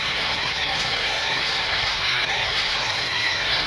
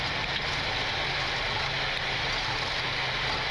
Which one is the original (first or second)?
second